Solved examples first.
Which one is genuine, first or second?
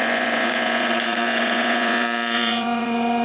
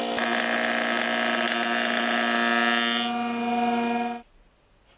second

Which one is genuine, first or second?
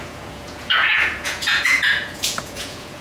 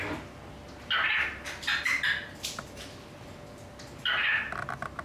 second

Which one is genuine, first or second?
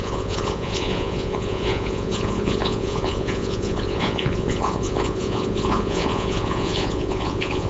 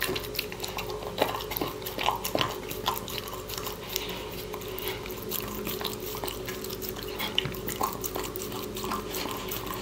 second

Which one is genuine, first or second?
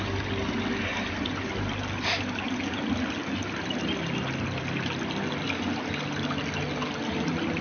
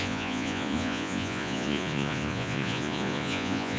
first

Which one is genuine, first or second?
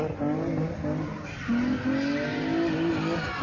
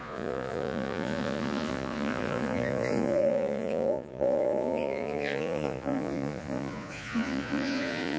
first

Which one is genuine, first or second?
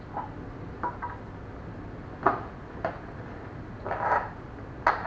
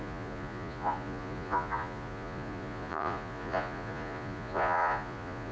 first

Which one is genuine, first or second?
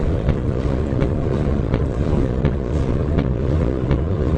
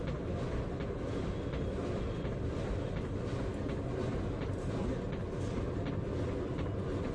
second